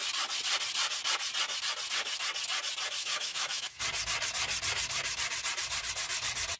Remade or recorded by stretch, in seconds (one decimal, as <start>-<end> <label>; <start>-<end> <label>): 0.0-3.0 recorded; 3.0-3.8 remade; 3.8-6.6 recorded